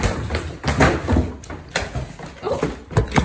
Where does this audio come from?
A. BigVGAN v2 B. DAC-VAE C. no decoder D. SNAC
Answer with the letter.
C